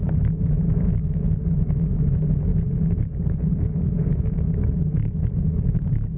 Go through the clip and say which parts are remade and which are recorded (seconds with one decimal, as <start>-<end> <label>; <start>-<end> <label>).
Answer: 0.0-2.5 remade; 2.5-3.4 recorded; 3.4-6.2 remade